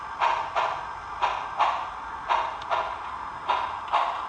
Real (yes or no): yes